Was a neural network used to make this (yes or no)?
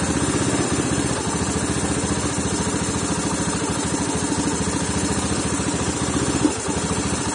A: no